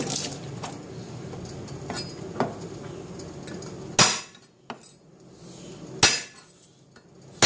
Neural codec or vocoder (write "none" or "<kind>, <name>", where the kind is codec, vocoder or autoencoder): none